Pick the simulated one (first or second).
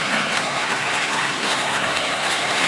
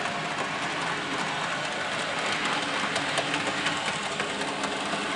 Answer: first